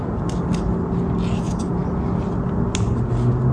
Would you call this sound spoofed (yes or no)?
no